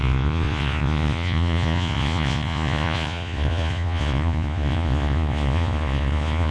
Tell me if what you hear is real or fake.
fake